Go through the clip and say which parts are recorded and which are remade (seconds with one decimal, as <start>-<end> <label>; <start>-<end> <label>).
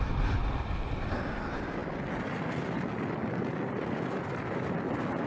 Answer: 0.0-5.3 recorded